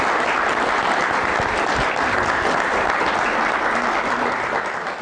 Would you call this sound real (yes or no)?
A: yes